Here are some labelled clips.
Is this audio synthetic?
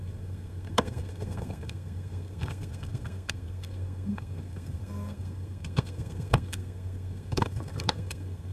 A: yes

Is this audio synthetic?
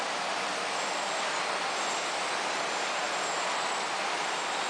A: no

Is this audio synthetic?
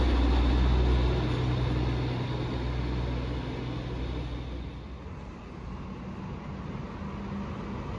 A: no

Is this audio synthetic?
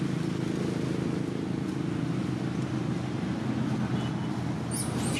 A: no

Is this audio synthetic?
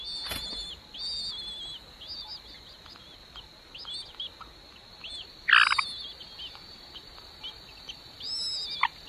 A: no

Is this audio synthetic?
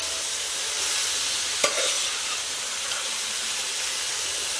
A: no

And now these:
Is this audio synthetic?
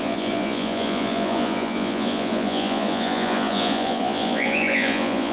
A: yes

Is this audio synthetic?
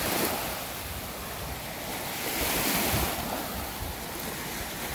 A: no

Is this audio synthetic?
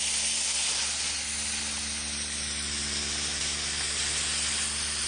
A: no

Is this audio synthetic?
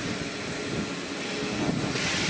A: no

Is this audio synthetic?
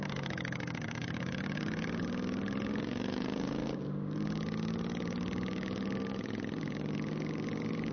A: yes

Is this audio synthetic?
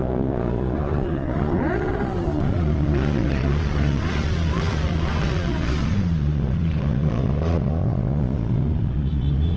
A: yes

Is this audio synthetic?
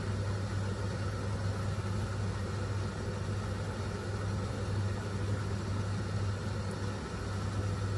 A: no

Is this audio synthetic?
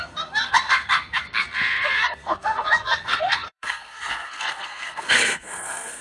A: yes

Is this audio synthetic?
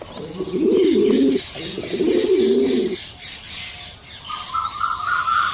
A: no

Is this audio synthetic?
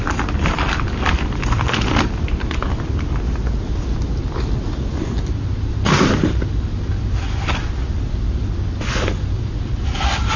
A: no